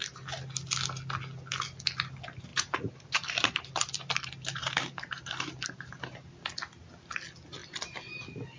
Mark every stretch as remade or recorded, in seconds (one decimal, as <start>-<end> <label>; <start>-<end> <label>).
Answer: 0.0-2.5 recorded; 2.5-6.3 remade; 6.3-7.6 recorded; 7.6-8.1 remade; 8.1-8.6 recorded